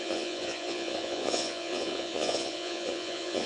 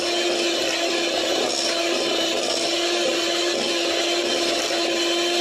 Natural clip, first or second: second